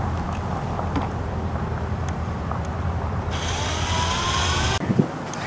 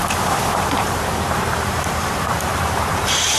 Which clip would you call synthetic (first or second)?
second